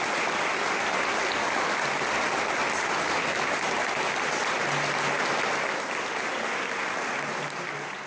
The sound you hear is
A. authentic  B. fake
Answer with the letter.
A